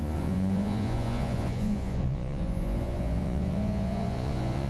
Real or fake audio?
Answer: fake